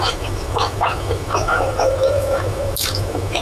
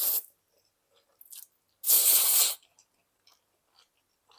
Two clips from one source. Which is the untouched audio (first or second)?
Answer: second